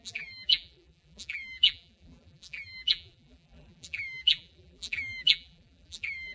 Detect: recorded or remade remade